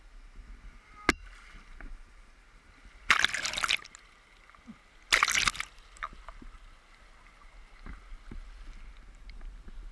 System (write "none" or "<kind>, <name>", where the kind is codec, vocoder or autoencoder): none